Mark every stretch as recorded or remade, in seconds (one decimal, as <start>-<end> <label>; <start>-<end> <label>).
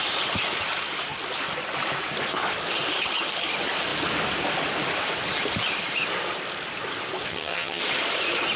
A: 0.0-7.3 recorded; 7.3-7.8 remade; 7.8-8.6 recorded